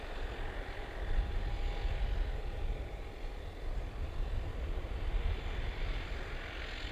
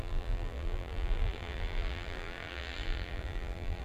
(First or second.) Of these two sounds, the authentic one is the first